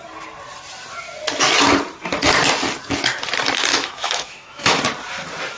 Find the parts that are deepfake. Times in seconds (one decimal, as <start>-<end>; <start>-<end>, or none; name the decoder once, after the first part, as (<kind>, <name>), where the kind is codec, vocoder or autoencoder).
3.7-4.8 (autoencoder, DAC-VAE)